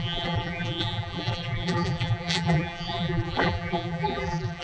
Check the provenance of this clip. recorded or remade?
remade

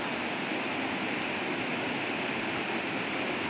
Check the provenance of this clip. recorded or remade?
recorded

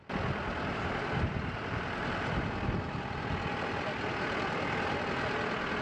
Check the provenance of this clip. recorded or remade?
remade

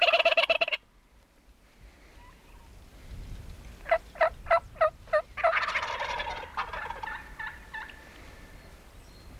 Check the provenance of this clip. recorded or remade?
recorded